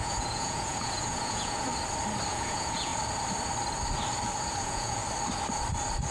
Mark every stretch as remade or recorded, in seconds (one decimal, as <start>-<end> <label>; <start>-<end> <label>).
0.0-1.7 remade; 1.7-2.3 recorded; 2.3-2.9 remade; 2.9-4.5 recorded; 4.5-5.0 remade; 5.0-6.1 recorded